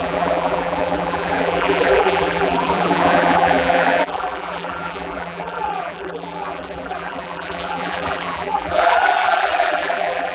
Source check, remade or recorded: remade